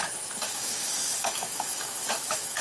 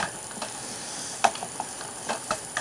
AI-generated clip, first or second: first